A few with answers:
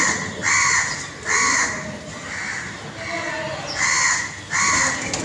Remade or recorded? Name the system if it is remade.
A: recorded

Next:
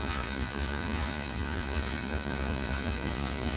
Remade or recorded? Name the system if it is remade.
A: remade, vocoder, Vocos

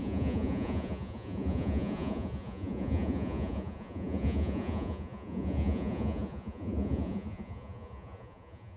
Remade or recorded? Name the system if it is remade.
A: remade, vocoder, Vocos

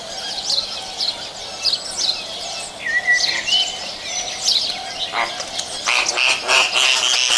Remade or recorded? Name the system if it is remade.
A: recorded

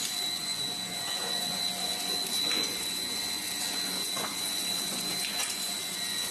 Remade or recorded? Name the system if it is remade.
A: remade, vocoder, Vocos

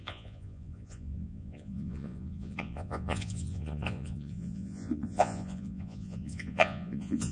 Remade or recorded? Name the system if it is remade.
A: remade, vocoder, Vocos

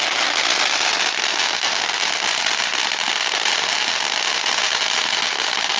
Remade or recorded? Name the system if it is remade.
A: recorded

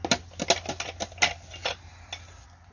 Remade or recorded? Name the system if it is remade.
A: recorded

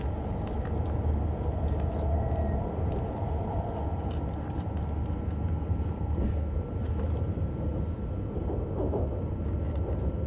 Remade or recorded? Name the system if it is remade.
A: recorded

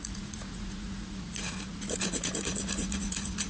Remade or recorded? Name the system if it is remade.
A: remade, vocoder, Vocos